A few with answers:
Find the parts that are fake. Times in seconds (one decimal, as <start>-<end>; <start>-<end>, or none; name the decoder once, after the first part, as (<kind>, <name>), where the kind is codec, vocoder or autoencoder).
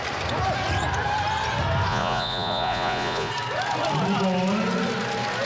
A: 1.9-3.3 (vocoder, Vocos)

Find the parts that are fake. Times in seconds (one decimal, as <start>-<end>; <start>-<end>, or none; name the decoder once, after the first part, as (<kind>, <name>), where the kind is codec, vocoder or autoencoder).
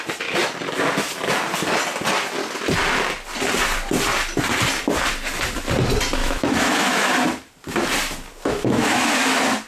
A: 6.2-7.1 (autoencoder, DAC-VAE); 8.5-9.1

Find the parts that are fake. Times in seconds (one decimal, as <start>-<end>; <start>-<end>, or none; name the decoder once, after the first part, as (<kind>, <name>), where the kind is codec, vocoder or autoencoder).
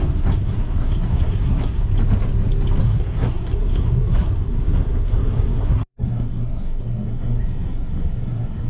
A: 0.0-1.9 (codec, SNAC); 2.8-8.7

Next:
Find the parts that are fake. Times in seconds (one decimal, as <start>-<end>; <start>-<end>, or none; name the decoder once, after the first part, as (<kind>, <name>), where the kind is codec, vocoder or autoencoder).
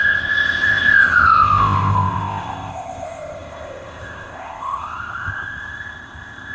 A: 0.0-6.5 (codec, ZipCodec)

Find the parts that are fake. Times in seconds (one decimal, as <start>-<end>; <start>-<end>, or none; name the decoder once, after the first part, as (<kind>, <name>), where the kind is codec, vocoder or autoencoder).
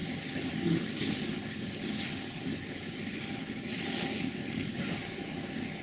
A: none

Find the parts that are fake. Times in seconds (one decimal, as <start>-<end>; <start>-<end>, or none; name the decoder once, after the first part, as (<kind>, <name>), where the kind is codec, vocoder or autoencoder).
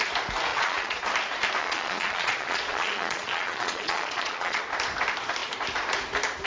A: 0.5-1.0 (vocoder, Vocos); 1.6-4.6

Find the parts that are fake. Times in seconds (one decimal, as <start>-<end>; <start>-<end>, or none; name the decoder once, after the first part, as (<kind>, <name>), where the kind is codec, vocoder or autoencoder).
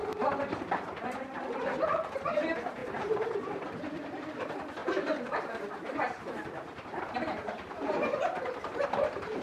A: 0.6-9.4 (vocoder, BigVGAN v2)